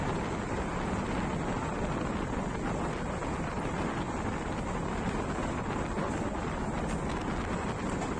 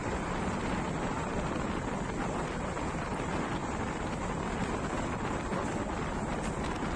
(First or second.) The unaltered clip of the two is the first